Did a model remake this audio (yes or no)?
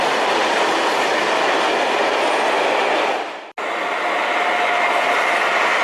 no